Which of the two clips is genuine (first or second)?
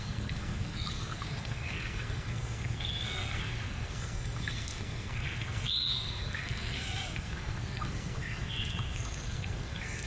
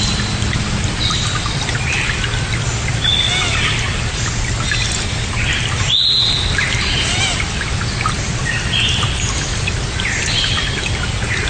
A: second